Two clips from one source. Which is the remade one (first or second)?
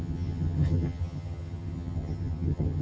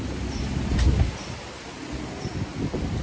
first